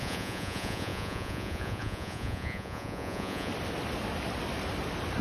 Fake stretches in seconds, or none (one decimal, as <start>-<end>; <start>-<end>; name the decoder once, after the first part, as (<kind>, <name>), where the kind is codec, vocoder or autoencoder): 0.0-3.5 (vocoder, Vocos)

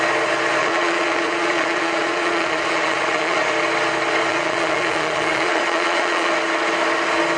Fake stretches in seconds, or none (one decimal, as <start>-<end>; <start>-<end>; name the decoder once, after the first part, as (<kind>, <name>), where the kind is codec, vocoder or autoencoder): 0.6-3.5 (vocoder, Vocos); 4.3-6.3

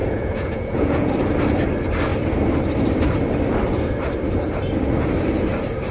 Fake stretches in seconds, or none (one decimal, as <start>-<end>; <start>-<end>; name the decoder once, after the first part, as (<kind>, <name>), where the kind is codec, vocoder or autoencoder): 0.0-1.1 (vocoder, Vocos)